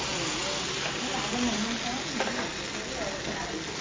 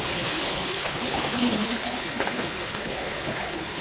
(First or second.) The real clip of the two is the first